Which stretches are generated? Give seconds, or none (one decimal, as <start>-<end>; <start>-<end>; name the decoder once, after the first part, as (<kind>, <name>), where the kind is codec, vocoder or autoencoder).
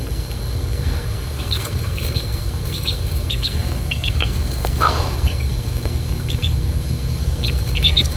0.0-8.2 (codec, SNAC)